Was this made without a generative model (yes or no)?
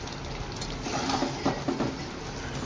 yes